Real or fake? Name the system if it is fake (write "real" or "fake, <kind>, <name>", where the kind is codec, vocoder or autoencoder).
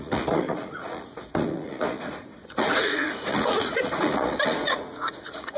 fake, vocoder, Vocos